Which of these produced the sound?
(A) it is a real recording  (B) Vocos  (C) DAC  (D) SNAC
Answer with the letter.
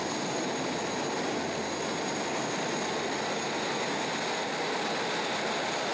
A